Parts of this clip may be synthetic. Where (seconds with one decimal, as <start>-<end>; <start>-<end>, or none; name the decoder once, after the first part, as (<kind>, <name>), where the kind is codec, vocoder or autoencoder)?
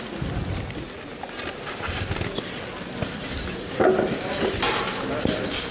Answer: none